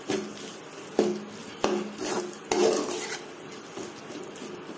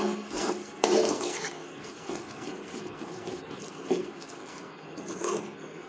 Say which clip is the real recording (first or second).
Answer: first